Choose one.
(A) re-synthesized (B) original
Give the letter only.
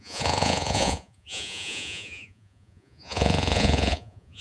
A